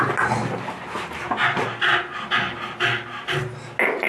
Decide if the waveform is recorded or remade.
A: recorded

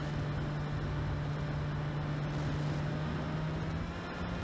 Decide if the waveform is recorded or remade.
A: recorded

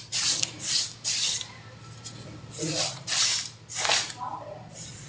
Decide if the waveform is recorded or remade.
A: remade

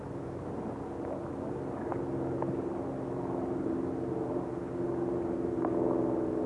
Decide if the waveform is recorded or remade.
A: recorded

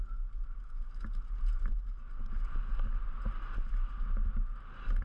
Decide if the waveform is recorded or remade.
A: recorded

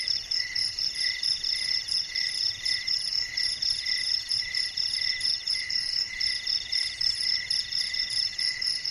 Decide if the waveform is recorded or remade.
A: remade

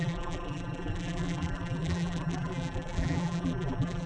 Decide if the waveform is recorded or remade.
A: remade